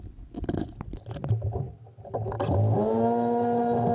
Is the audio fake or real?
real